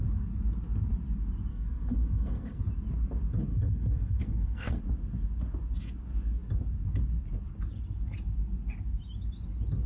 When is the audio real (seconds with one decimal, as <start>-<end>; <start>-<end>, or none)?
0.0-1.5; 2.6-3.5; 4.8-9.9